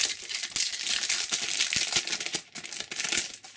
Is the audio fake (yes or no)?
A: no